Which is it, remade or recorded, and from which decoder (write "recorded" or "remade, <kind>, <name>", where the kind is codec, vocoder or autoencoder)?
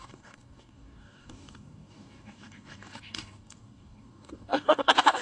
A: remade, codec, DAC